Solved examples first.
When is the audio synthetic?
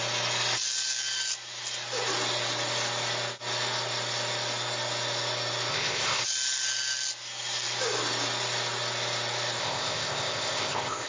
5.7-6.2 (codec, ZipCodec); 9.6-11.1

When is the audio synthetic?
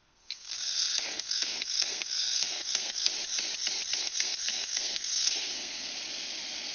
0.0-3.1 (codec, SNAC); 4.0-5.9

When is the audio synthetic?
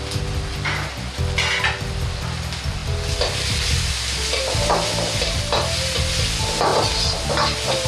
none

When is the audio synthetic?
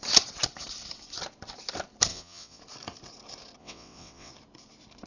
2.1-2.6 (vocoder, WaveNeXt); 3.6-4.3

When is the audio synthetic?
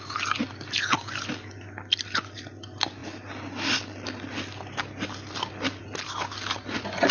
none